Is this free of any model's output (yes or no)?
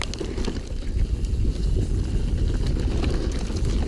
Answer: yes